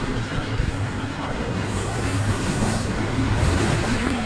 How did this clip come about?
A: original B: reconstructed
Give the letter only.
B